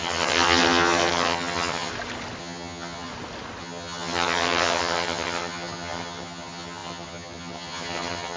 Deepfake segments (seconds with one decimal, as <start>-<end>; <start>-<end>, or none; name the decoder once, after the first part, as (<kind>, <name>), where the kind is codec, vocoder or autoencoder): 0.0-1.9 (vocoder, HiFi-GAN); 2.4-3.1; 3.6-8.4